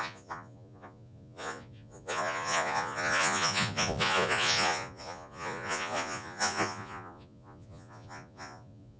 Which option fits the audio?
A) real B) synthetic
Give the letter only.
B